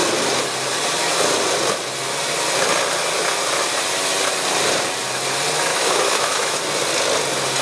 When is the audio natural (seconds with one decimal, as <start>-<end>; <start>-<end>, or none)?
0.0-5.7; 6.6-7.6